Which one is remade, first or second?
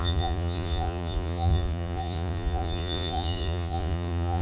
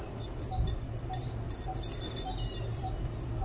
first